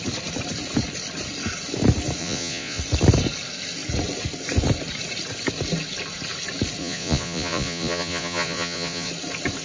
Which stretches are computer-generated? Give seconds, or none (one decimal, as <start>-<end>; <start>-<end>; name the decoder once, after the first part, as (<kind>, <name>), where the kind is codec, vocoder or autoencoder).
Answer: 2.2-2.8 (vocoder, Vocos); 6.8-9.1